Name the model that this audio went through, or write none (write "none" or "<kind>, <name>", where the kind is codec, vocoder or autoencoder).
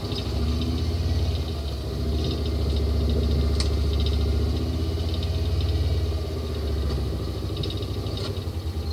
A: none